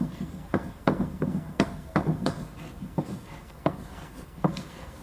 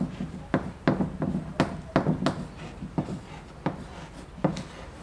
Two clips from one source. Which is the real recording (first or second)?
second